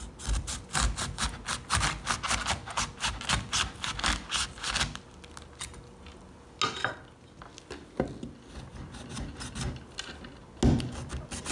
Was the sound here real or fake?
real